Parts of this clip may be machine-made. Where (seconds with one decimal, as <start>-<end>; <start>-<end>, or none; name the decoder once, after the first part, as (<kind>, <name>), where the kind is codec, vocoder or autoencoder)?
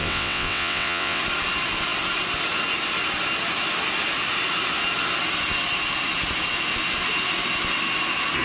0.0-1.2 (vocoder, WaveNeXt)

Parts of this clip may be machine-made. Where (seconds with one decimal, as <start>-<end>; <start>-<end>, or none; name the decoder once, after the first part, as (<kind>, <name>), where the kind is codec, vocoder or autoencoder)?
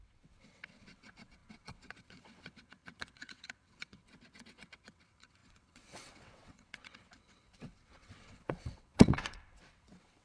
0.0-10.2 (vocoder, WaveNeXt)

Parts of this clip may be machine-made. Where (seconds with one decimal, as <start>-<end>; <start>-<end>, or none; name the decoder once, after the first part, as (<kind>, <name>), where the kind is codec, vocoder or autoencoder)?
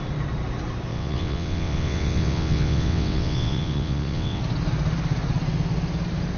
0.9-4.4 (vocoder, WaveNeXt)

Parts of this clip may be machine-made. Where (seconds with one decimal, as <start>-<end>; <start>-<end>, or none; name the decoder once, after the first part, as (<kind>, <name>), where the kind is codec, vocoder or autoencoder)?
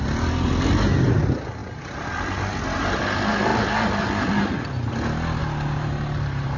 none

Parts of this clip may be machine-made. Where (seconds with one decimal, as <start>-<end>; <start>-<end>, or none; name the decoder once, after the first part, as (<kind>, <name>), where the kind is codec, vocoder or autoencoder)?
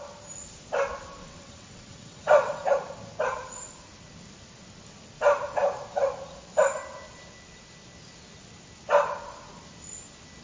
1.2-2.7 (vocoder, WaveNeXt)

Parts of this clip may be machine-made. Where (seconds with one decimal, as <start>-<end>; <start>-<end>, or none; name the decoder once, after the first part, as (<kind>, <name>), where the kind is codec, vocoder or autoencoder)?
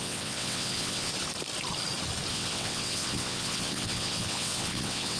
0.0-1.1 (vocoder, WaveNeXt); 2.3-5.2